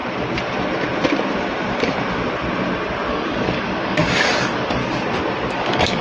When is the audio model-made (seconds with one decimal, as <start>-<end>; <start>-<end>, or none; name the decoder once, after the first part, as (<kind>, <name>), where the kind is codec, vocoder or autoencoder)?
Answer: 3.1-4.8 (codec, DAC); 5.5-6.0